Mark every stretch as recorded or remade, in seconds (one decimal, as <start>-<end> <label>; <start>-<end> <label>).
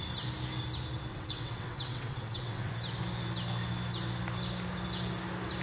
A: 0.0-1.1 recorded; 1.1-2.7 remade; 2.7-5.6 recorded